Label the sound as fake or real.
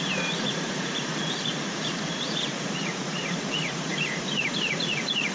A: fake